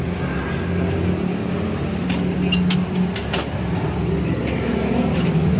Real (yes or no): yes